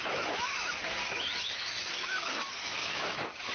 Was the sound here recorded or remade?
remade